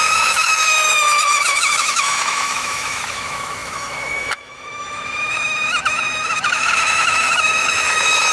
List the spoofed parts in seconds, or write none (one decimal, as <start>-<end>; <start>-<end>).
0.0-8.3